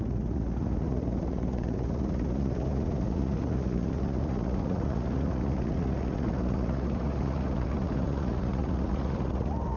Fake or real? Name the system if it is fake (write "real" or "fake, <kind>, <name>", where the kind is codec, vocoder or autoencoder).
fake, vocoder, Vocos